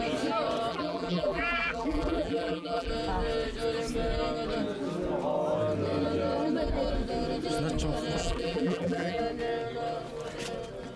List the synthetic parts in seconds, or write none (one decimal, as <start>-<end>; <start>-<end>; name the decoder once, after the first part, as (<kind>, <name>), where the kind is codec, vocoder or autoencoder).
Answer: 0.7-2.9 (vocoder, BigVGAN v2); 8.2-9.2